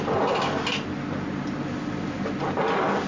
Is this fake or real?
real